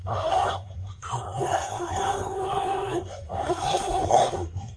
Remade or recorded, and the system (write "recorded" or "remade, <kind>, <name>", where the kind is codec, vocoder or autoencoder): remade, codec, SNAC